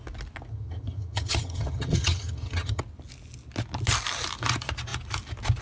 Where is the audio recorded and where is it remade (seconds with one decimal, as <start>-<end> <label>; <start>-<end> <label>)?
0.0-0.5 recorded; 0.5-2.8 remade; 2.8-5.6 recorded